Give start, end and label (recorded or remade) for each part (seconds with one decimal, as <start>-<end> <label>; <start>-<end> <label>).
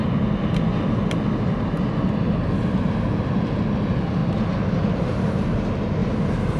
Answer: 0.0-6.6 recorded